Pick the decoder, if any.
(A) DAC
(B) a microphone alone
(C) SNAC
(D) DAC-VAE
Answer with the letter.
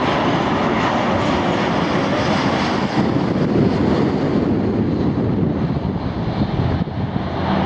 B